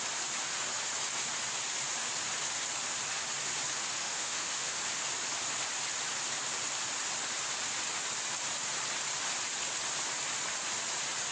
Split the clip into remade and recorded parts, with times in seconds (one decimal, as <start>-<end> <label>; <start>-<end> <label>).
0.0-4.0 recorded; 4.0-4.8 remade; 4.8-11.3 recorded